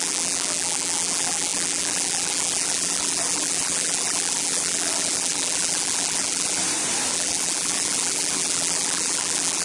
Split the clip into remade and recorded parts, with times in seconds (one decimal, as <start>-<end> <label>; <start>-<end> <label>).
0.0-6.6 remade; 6.6-7.1 recorded; 7.1-9.6 remade